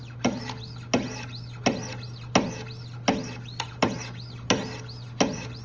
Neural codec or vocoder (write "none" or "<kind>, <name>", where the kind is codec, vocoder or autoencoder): none